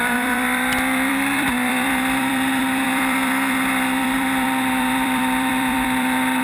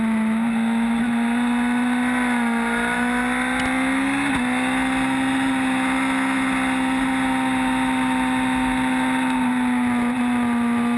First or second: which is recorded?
second